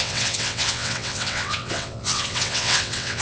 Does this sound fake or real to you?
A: fake